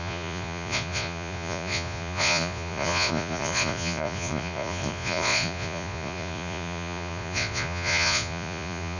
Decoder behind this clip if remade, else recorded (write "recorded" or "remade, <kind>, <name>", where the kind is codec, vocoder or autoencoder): remade, vocoder, Vocos